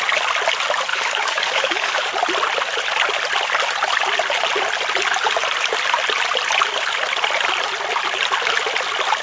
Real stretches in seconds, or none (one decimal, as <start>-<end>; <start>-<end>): 0.0-0.9; 2.1-9.2